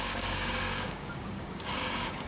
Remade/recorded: remade